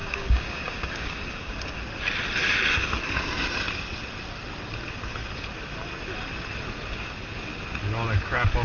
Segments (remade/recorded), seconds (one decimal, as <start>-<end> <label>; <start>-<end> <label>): 0.0-1.8 remade; 1.8-8.6 recorded